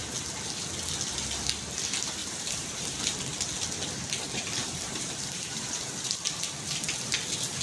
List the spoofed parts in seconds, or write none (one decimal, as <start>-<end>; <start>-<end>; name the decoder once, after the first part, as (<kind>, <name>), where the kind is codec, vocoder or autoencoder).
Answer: 2.2-3.0 (vocoder, BigVGAN v2); 4.6-6.3